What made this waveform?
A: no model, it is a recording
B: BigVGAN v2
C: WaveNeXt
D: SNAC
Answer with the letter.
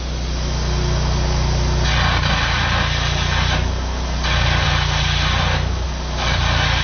A